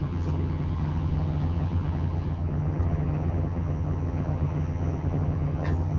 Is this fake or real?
fake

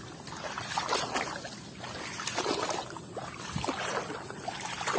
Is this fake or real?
real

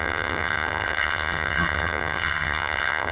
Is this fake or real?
fake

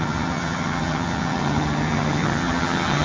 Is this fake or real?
fake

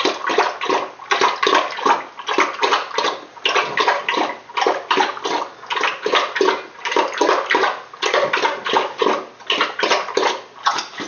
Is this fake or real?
real